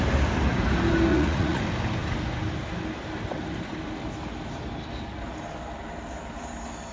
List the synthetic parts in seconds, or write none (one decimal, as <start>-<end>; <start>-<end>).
1.1-1.6